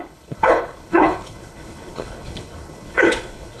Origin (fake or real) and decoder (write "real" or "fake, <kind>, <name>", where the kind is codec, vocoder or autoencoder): fake, codec, HILCodec